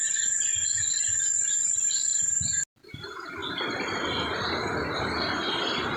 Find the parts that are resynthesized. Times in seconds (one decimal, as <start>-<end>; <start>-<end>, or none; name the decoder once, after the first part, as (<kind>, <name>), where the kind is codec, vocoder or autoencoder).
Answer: 0.0-2.1 (vocoder, BigVGAN v2); 2.9-3.4; 5.0-6.0

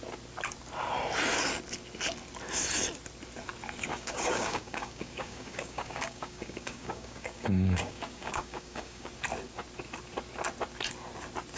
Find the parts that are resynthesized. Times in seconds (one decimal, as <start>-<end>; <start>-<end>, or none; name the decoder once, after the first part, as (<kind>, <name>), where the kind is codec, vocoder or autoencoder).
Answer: 3.9-9.1 (codec, DAC)

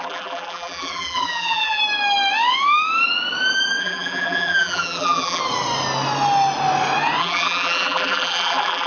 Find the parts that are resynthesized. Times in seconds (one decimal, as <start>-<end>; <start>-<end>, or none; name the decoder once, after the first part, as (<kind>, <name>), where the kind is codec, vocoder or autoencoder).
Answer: 0.0-1.8 (vocoder, BigVGAN v2); 3.8-5.4; 7.2-8.9